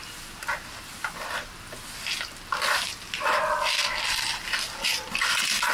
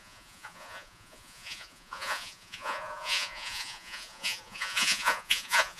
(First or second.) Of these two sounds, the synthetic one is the second